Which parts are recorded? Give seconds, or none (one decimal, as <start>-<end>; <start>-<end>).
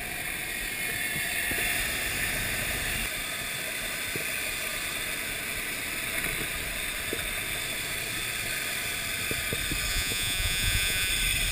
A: 0.0-9.9; 11.1-11.5